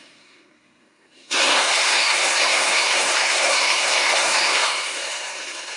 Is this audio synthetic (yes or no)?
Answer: yes